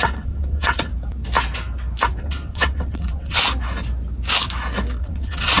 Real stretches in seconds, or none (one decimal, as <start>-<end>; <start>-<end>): 0.9-2.2; 3.4-5.0